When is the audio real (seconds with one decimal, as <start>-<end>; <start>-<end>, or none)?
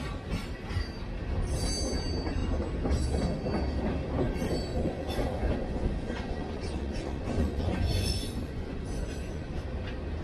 0.0-4.7; 9.6-10.2